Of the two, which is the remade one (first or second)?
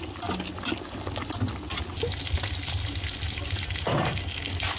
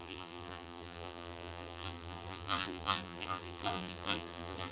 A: second